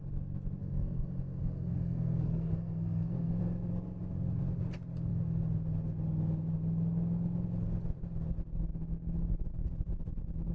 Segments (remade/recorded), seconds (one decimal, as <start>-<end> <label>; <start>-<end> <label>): 0.0-0.6 recorded; 0.6-3.4 remade; 3.4-10.5 recorded